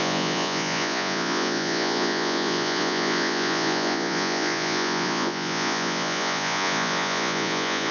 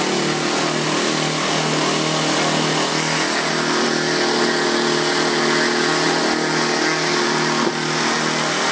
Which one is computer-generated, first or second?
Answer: first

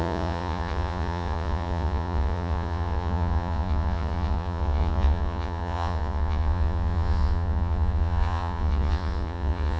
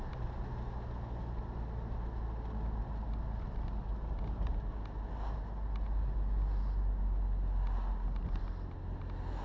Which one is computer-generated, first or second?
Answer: first